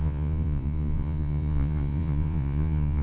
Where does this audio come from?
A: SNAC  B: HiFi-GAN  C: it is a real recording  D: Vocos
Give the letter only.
D